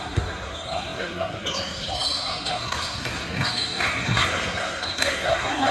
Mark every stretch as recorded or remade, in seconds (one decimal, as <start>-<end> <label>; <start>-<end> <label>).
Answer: 0.0-5.7 remade